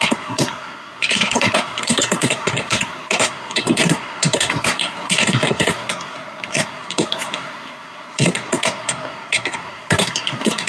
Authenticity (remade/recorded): remade